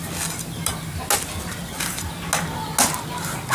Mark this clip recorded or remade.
recorded